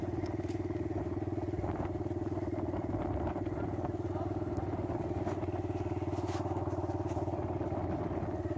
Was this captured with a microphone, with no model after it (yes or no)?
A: yes